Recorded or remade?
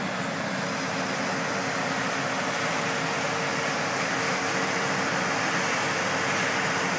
recorded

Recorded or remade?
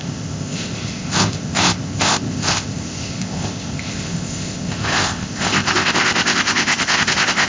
remade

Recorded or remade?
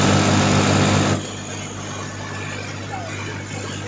recorded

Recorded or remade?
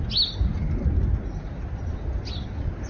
recorded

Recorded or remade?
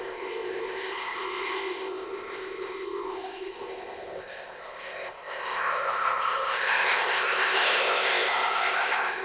remade